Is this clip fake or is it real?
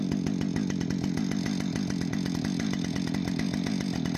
real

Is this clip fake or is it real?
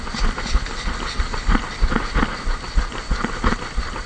real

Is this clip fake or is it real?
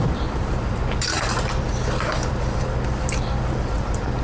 fake